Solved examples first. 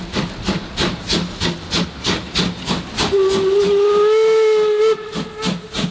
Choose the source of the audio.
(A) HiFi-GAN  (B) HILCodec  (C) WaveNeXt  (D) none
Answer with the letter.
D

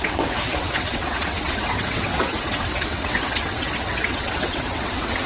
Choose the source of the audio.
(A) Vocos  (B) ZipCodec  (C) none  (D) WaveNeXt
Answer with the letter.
D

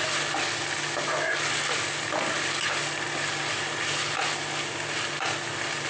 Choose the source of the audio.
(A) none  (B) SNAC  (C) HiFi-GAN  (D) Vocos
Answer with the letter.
A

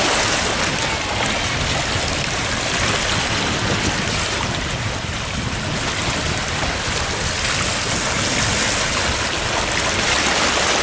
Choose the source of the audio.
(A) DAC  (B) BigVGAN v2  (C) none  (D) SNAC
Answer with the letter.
C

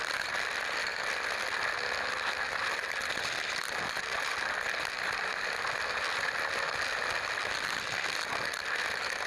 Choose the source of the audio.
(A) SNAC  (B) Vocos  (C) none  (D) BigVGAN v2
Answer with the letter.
C